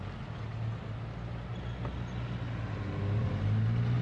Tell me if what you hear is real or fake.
real